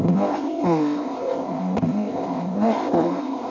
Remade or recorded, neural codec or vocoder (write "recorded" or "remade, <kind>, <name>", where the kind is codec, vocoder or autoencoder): remade, codec, ZipCodec